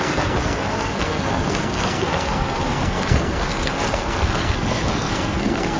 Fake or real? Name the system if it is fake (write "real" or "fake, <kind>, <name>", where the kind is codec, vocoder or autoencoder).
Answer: fake, codec, SNAC